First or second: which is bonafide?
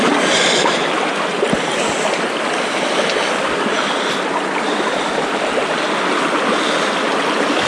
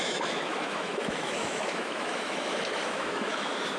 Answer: first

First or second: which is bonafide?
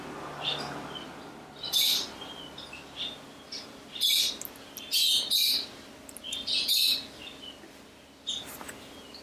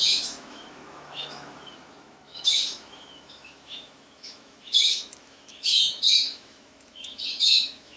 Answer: first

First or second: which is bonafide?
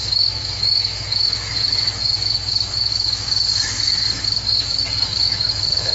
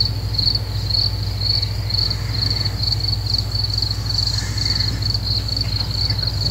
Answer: second